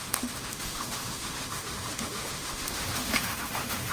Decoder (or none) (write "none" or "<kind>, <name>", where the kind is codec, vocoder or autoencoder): autoencoder, DAC-VAE